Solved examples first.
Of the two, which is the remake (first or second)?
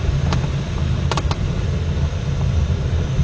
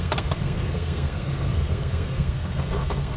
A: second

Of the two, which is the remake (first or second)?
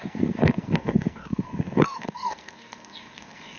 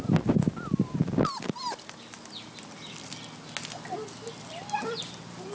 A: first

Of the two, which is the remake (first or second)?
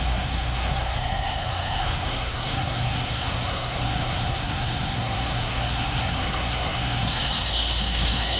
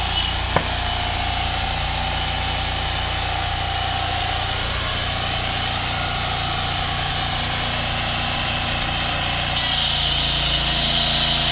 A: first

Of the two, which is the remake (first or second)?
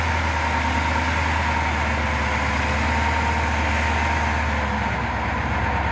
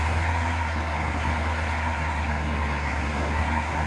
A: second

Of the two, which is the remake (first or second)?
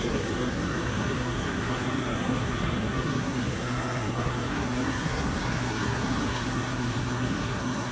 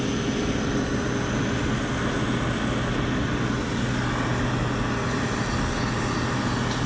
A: first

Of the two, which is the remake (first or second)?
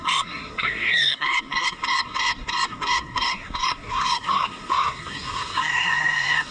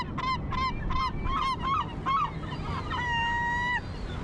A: first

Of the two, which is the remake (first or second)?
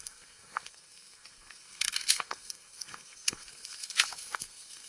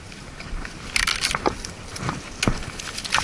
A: first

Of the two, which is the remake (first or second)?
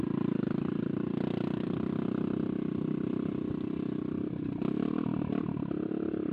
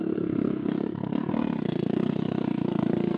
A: second